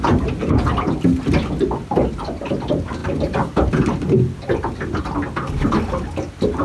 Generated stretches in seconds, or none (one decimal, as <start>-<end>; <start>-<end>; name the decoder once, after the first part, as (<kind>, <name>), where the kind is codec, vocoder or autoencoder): none